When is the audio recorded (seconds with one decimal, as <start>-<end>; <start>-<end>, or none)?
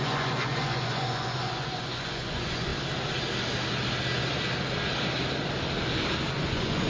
2.7-6.3